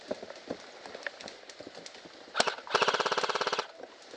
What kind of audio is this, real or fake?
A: real